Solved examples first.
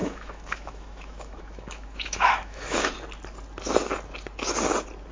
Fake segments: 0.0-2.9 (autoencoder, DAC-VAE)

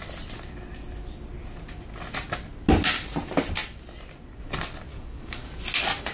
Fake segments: 4.9-5.5 (codec, DAC)

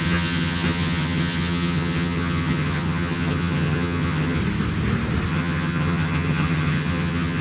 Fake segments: 0.0-4.4 (vocoder, HiFi-GAN); 5.3-7.4